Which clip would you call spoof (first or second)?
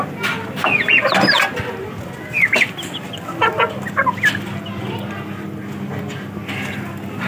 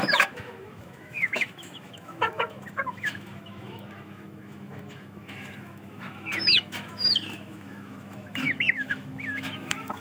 second